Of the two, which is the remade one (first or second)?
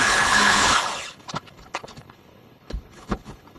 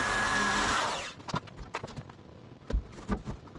first